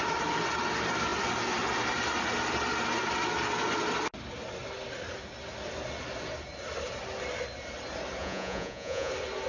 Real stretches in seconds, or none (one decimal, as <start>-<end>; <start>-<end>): 0.0-8.2; 9.1-9.5